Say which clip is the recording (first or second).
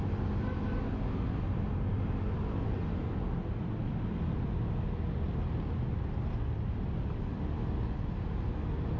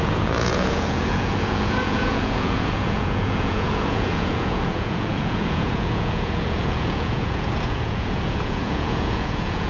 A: first